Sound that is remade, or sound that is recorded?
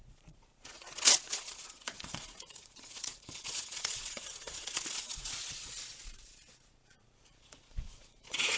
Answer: remade